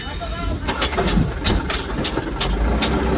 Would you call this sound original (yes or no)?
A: yes